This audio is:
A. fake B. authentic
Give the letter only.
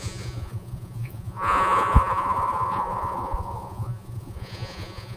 A